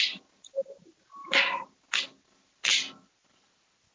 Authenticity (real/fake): real